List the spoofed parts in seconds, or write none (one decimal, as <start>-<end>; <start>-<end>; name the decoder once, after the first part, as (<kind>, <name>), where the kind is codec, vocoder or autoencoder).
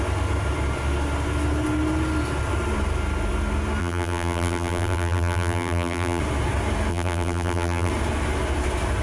3.8-6.2 (vocoder, BigVGAN v2); 6.9-7.9